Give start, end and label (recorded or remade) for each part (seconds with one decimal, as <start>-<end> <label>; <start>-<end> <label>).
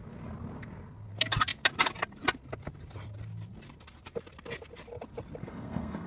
0.0-5.4 recorded; 5.4-6.1 remade